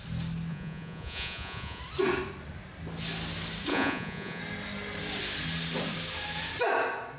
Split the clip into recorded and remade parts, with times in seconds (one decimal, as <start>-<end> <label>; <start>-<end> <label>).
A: 0.0-0.5 recorded; 0.5-1.8 remade; 1.8-3.7 recorded; 3.7-4.4 remade; 4.4-7.2 recorded